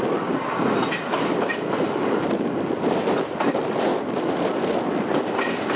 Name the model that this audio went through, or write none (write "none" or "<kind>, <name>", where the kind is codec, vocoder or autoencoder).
none